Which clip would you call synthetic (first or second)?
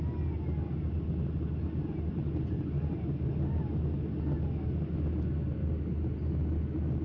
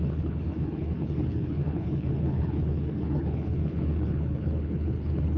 second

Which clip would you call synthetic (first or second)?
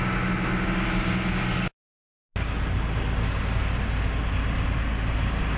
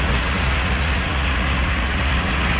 second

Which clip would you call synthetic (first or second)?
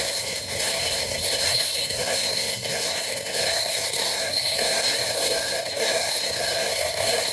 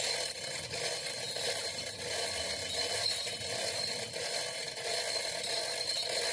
first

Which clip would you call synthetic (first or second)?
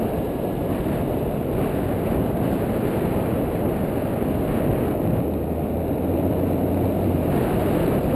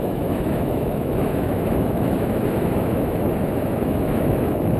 second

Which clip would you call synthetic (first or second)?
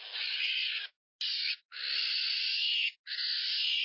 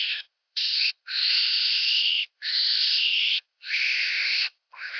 second